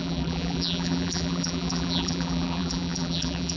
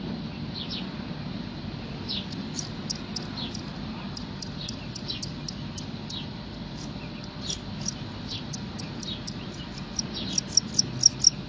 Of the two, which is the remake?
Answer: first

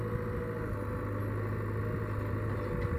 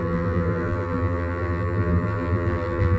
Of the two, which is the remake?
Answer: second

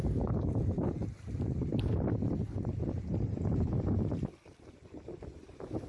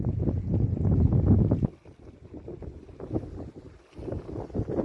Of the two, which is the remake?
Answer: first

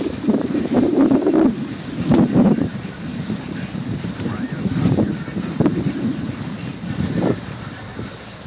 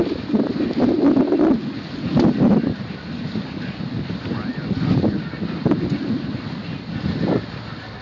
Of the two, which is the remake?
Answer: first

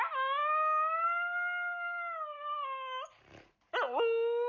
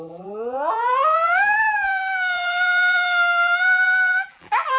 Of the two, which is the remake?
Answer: second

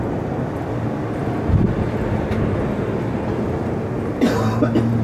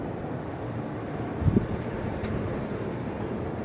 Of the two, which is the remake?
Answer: second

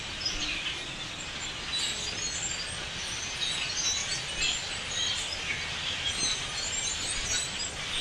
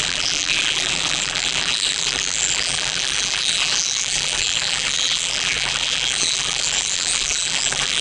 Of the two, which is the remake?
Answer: second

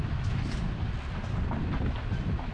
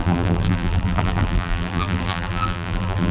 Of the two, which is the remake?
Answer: second